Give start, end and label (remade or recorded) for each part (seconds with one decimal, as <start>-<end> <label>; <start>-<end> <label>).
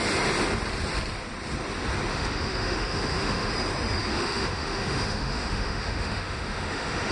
0.0-2.1 recorded; 2.1-3.5 remade; 3.5-4.1 recorded; 4.1-7.1 remade